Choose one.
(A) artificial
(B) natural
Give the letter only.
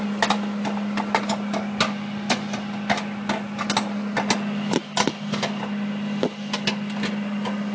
B